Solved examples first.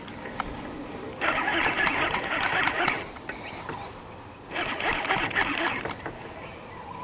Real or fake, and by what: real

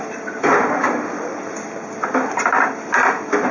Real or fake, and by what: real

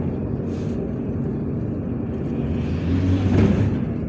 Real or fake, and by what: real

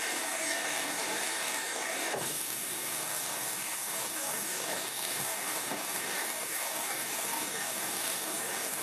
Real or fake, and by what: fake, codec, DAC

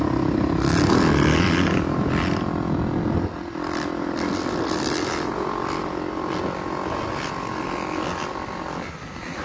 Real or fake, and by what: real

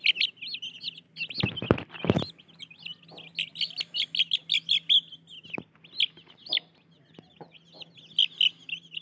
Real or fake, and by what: real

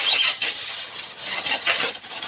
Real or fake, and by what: fake, vocoder, HiFi-GAN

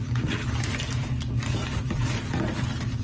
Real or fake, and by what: real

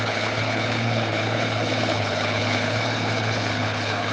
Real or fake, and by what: fake, codec, HILCodec